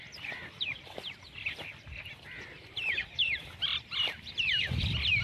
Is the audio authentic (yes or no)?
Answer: no